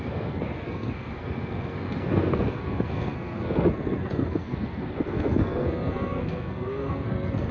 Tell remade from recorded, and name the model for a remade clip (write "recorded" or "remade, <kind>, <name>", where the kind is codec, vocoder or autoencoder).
remade, codec, SNAC